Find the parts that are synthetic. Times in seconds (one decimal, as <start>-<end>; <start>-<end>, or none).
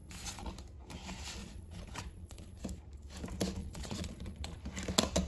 0.0-0.5; 1.4-2.6; 3.6-4.6